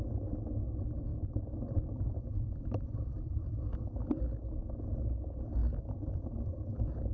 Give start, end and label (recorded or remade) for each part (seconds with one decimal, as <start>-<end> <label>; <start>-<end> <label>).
0.0-1.1 recorded; 1.1-4.4 remade; 4.4-5.6 recorded; 5.6-7.1 remade

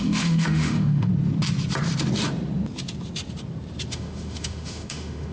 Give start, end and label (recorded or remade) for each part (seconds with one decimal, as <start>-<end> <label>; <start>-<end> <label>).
0.0-1.1 remade; 1.1-3.9 recorded; 3.9-5.3 remade

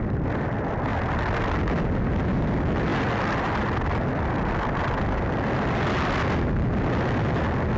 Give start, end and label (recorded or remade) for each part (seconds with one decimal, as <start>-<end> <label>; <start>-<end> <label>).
0.0-7.8 recorded

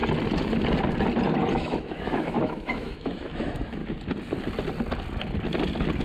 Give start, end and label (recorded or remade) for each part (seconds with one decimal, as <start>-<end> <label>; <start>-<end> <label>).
0.0-1.5 recorded; 1.5-3.8 remade; 3.8-6.0 recorded

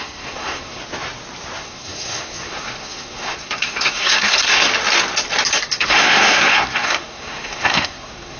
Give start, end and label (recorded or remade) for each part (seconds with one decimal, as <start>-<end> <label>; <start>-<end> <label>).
0.0-0.8 remade; 0.8-1.6 recorded; 1.6-4.7 remade; 4.7-5.7 recorded; 5.7-8.4 remade

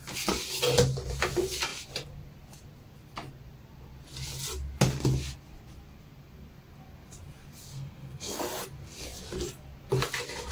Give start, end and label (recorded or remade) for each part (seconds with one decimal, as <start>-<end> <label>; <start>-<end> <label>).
0.0-7.7 recorded; 7.7-8.4 remade; 8.4-10.5 recorded

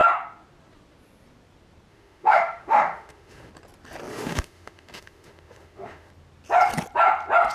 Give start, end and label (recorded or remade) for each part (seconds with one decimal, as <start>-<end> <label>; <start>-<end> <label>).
0.0-1.9 recorded; 1.9-3.5 remade; 3.5-4.1 recorded; 4.1-6.1 remade; 6.1-7.5 recorded

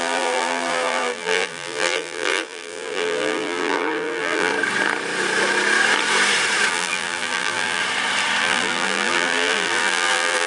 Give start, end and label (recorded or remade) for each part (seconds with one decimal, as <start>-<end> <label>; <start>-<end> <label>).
0.0-4.5 remade; 4.5-6.7 recorded; 6.7-7.8 remade; 7.8-8.4 recorded; 8.4-10.5 remade